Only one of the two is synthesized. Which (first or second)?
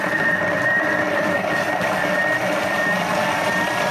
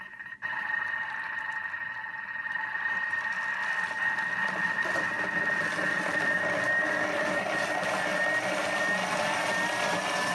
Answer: first